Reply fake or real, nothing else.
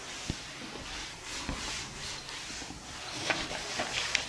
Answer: real